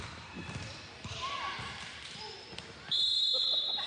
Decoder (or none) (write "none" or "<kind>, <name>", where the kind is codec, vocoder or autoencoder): vocoder, BigVGAN v2